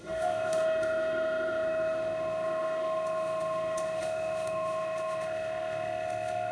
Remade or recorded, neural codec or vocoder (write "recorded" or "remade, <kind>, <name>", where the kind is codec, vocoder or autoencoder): remade, autoencoder, DAC-VAE